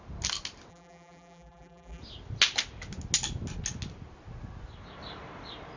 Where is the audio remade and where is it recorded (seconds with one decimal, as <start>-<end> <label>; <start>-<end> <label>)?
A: 0.0-0.7 recorded; 0.7-2.0 remade; 2.0-5.8 recorded